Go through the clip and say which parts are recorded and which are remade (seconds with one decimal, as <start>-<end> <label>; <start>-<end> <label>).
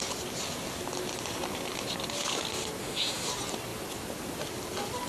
0.0-2.8 recorded; 2.8-3.3 remade; 3.3-5.1 recorded